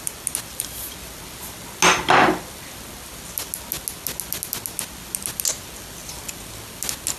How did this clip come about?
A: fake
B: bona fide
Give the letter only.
B